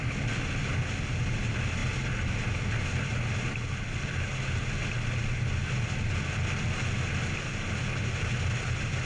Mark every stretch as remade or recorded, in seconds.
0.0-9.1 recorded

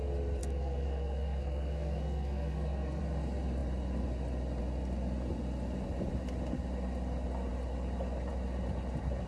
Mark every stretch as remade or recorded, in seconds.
0.0-0.4 recorded; 0.4-3.0 remade; 3.0-9.3 recorded